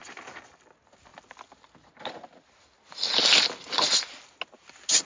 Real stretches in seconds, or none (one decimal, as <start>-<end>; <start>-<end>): 0.0-5.0